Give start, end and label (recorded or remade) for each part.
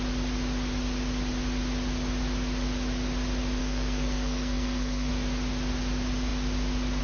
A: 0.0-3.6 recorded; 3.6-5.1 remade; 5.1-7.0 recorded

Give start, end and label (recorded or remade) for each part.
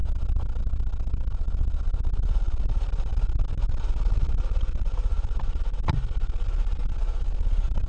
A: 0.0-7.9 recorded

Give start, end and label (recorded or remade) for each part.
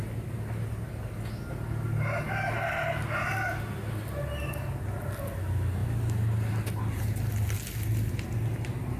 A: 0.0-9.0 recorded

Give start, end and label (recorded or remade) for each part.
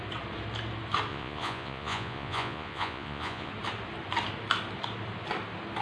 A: 0.0-1.1 recorded; 1.1-3.5 remade; 3.5-5.8 recorded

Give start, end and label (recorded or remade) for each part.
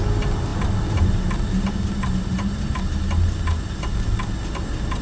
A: 0.0-5.0 recorded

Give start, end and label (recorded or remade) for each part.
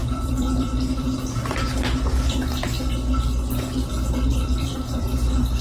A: 0.0-1.7 remade; 1.7-4.3 recorded; 4.3-5.6 remade